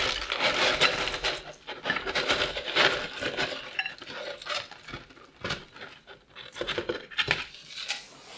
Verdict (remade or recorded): recorded